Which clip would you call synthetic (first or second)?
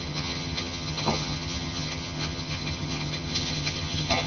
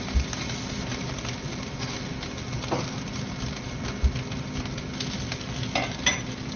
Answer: first